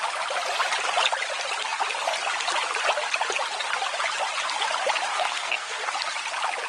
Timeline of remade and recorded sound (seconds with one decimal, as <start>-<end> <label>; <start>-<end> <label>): 0.0-5.1 recorded; 5.1-5.9 remade; 5.9-6.7 recorded